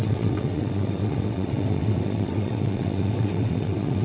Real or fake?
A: fake